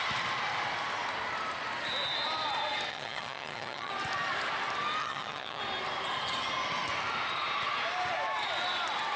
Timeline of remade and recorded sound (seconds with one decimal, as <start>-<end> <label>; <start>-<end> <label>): 0.0-2.9 recorded; 2.9-3.9 remade; 3.9-5.0 recorded; 5.0-5.6 remade; 5.6-9.2 recorded